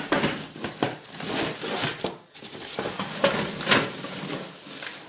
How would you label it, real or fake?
real